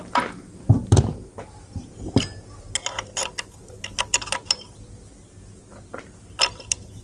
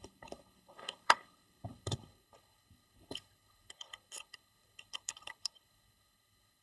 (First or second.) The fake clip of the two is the second